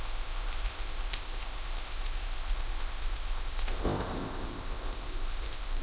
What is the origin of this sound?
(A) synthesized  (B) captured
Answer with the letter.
A